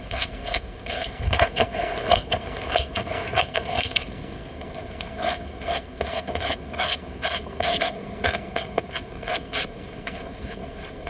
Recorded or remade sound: remade